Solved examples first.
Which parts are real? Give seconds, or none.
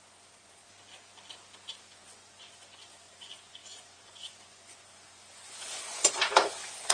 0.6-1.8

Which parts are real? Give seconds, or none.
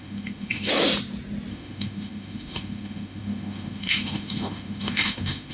0.7-1.5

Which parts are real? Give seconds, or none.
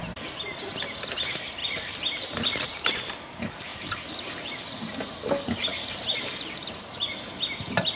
0.0-1.6; 2.9-3.7; 4.5-5.7; 7.3-8.0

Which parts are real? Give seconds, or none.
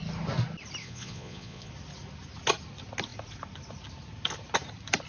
0.0-0.8; 1.7-5.1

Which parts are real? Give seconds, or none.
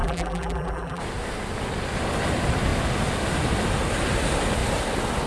1.0-5.3